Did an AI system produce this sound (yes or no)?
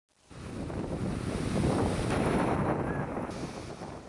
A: no